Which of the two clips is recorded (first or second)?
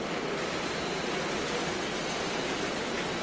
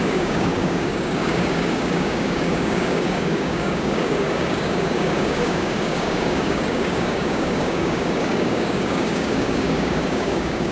first